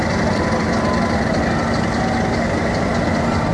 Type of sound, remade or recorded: recorded